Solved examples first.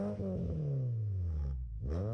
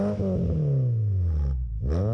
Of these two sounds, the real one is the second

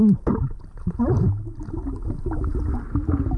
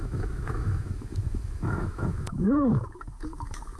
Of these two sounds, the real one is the first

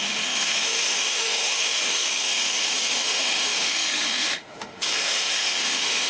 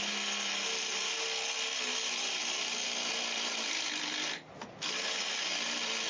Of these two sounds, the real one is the second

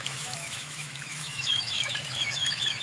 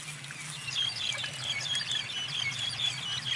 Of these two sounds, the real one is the second